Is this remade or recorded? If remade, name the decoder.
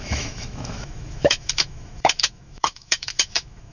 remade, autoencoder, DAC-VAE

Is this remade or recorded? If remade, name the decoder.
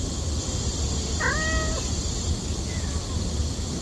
recorded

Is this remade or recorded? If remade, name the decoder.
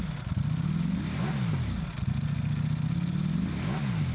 recorded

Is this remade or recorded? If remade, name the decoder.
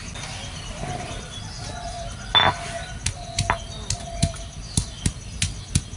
recorded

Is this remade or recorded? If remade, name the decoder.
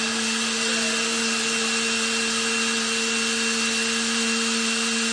recorded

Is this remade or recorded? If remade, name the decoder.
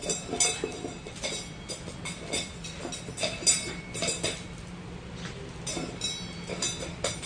recorded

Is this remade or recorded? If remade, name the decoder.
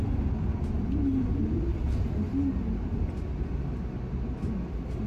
recorded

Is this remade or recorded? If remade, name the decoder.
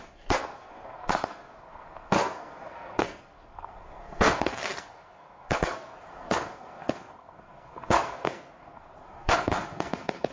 remade, codec, SNAC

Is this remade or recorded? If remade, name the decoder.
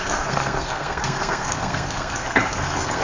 remade, codec, SNAC